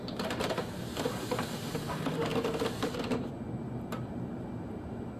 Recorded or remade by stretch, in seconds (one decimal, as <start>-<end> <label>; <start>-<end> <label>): 0.0-2.3 remade; 2.3-3.3 recorded; 3.3-5.2 remade